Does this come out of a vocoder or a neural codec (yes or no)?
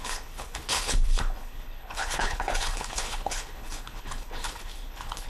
yes